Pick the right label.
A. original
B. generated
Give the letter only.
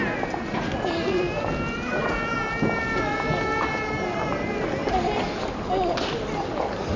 A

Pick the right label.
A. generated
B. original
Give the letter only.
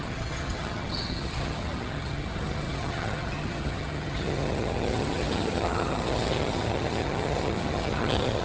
A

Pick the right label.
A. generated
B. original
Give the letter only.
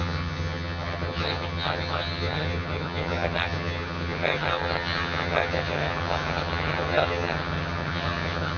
A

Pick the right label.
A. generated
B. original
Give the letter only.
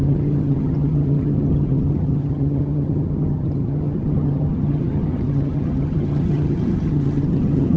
A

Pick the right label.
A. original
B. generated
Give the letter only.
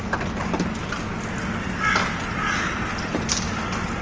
A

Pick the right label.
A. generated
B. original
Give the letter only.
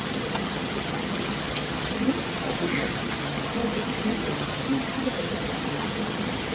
A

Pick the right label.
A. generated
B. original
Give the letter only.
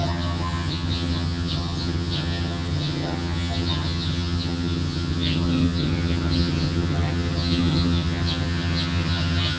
A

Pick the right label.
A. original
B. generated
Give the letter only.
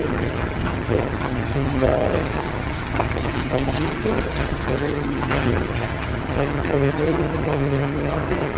B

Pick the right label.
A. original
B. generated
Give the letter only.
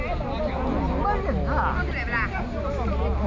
A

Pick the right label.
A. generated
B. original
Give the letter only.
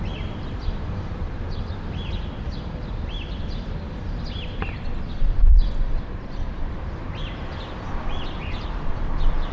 B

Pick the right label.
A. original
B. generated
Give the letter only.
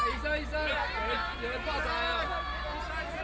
A